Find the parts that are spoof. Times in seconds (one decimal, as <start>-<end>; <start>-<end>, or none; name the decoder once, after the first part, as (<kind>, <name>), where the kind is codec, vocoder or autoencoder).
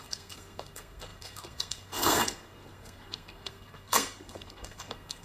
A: 0.0-5.2 (codec, SNAC)